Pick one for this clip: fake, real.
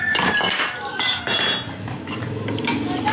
real